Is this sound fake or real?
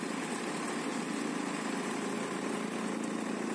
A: real